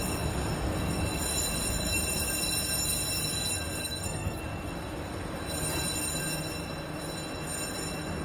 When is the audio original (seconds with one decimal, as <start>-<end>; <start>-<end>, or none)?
0.0-3.8; 4.4-8.2